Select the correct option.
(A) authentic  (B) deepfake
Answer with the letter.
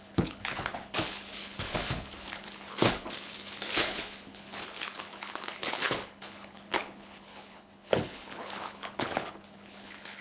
B